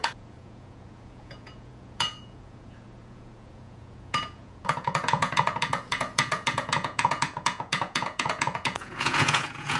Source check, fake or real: fake